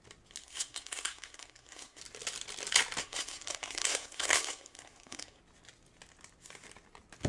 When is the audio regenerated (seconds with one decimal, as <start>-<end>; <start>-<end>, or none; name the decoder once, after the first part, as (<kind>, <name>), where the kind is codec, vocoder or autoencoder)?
0.4-2.0 (codec, SNAC); 3.0-5.4